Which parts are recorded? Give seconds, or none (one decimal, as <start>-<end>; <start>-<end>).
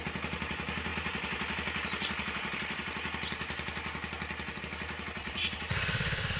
0.0-5.2